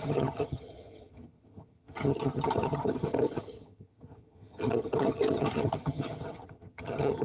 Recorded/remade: remade